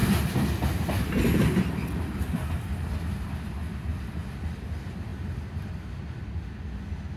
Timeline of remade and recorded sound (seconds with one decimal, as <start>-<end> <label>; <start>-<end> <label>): 0.0-7.2 recorded